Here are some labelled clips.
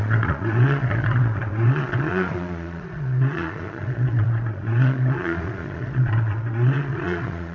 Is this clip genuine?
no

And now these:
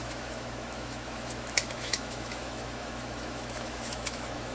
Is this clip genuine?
no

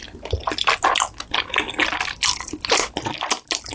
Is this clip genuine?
yes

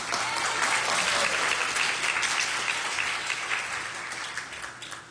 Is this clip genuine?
yes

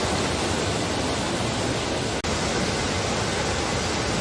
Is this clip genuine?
yes